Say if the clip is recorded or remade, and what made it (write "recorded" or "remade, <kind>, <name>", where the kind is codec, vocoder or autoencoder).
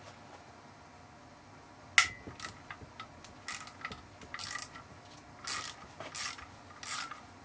recorded